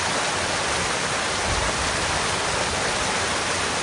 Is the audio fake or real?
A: real